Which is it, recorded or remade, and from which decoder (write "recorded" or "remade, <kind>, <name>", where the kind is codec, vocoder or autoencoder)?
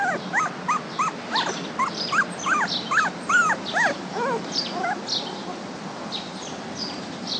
recorded